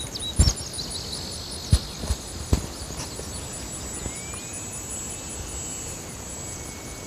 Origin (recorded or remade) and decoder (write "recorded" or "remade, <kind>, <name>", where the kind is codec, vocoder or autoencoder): recorded